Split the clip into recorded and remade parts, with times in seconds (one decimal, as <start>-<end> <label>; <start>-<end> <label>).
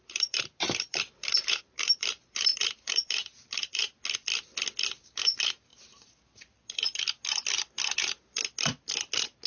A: 0.0-3.8 remade; 3.8-5.0 recorded; 5.0-5.7 remade; 5.7-9.5 recorded